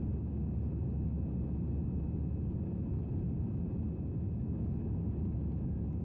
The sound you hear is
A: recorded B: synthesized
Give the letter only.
A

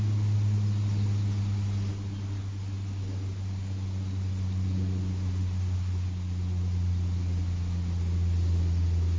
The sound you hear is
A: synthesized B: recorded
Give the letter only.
B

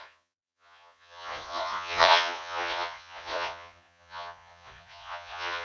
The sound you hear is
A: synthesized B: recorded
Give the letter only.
A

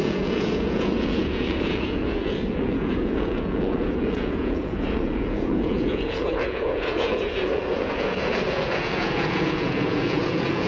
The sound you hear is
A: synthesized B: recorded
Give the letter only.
A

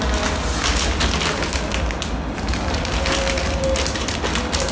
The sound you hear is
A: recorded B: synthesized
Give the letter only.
A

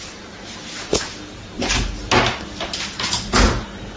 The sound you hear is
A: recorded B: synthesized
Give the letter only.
A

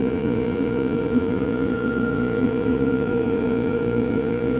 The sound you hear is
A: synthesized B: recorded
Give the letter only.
A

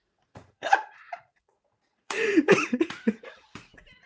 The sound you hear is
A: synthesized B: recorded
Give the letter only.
A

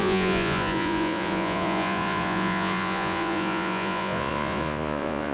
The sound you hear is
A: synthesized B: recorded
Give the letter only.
A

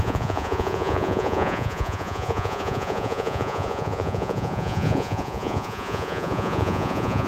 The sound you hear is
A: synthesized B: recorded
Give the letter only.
A